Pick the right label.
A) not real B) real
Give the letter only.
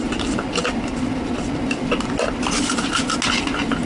B